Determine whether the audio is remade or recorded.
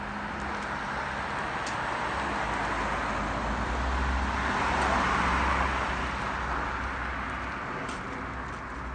recorded